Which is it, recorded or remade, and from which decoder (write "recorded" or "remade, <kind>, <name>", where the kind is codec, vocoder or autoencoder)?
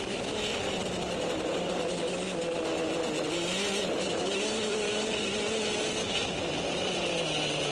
recorded